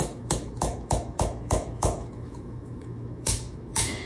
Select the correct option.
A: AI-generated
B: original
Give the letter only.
A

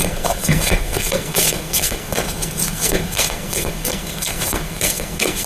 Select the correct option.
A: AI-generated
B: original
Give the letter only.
A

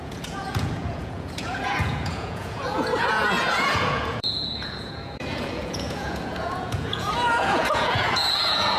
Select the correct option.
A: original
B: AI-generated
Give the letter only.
B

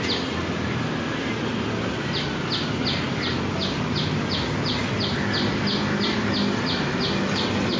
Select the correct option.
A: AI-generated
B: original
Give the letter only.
B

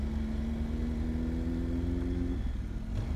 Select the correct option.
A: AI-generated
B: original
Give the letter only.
B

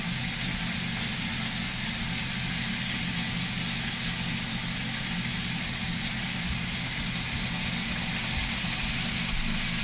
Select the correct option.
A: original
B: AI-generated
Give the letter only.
A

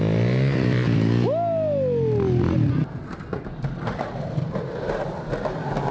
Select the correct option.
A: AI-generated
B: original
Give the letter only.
B